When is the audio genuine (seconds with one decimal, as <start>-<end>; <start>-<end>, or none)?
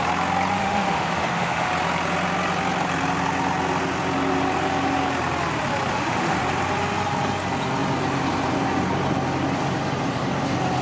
0.0-0.6; 1.7-5.9; 6.4-10.8